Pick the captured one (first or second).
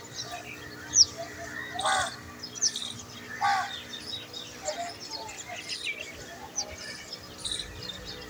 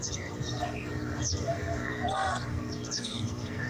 first